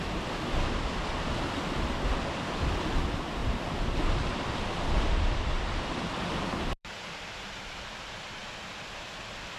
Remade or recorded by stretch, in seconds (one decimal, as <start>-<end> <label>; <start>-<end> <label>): 0.0-3.4 recorded; 3.4-7.7 remade; 7.7-9.6 recorded